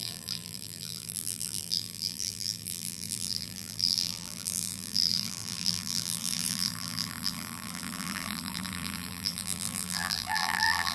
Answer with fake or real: fake